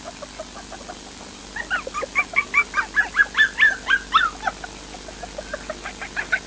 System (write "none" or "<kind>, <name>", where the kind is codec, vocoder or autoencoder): none